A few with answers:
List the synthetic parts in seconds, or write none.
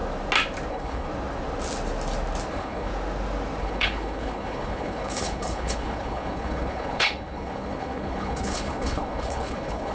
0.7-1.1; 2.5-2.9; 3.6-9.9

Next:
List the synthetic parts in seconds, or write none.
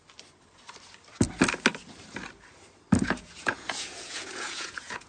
3.1-5.1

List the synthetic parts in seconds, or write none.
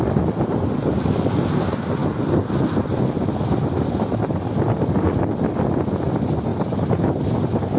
6.5-7.2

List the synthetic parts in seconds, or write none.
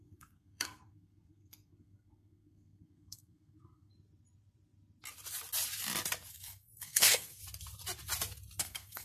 0.0-3.9; 6.3-7.4; 8.6-9.0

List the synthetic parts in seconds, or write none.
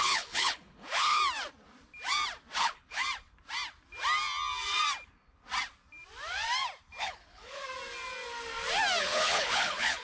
0.0-1.2; 2.6-3.0; 7.0-7.6; 9.0-10.0